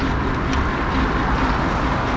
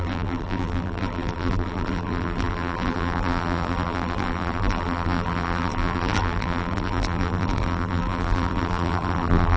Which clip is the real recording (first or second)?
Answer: first